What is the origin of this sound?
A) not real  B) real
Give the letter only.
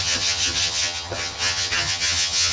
A